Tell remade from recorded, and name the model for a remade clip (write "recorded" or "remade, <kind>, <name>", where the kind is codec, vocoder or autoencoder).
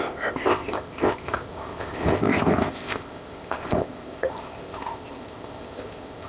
remade, codec, ZipCodec